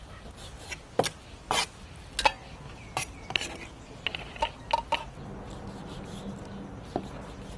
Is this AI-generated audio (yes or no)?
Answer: no